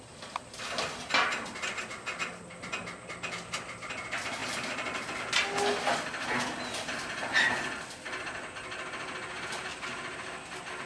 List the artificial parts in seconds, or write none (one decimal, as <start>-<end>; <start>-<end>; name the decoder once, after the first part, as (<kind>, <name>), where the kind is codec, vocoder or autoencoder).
none